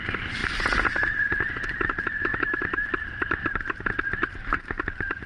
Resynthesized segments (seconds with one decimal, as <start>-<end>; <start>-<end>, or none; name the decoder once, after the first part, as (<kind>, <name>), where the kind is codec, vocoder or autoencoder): none